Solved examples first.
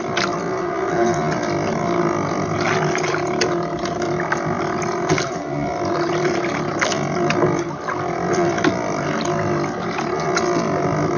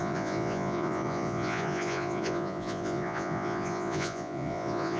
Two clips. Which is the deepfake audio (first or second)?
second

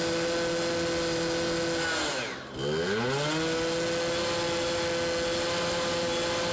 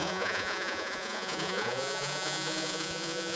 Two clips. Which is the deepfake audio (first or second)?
second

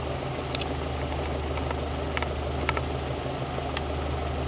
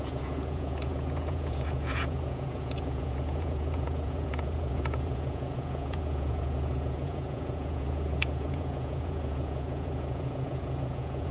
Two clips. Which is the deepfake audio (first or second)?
second